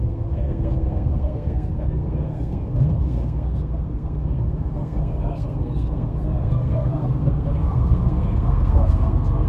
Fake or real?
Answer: fake